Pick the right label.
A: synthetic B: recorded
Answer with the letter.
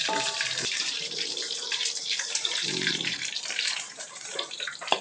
A